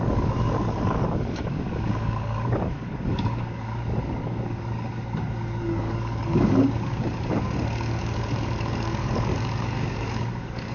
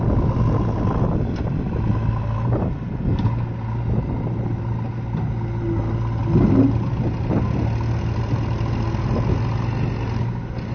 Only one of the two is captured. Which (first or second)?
second